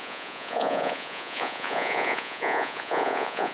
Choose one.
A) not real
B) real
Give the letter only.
A